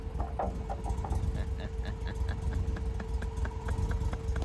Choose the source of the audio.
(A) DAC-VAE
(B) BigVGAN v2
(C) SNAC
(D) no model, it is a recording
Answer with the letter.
D